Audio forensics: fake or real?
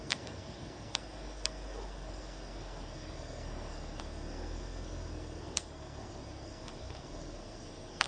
fake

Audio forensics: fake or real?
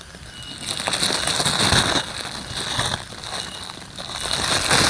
real